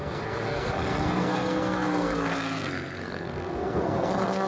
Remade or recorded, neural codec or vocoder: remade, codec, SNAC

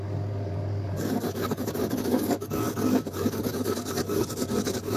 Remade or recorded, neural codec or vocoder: remade, codec, DAC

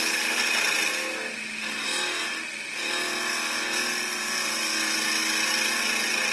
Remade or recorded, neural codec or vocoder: recorded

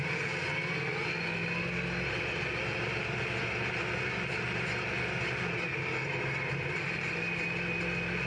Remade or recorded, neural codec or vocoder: recorded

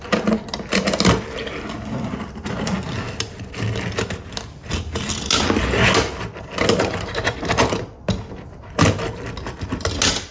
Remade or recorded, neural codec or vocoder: recorded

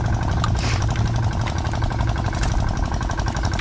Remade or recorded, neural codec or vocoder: recorded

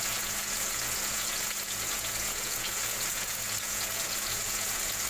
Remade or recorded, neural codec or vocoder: remade, vocoder, Vocos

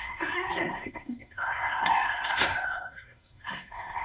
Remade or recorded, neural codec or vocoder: remade, codec, SNAC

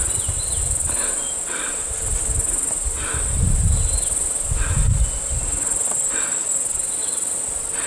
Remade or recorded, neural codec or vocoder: recorded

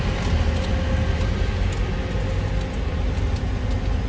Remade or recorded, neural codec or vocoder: recorded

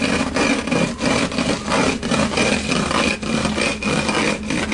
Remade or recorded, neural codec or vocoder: recorded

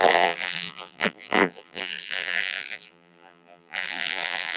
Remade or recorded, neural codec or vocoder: remade, vocoder, BigVGAN v2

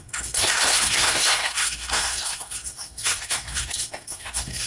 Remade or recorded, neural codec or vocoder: remade, codec, SNAC